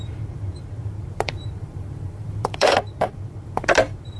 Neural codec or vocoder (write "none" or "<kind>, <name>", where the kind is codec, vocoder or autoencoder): vocoder, BigVGAN v2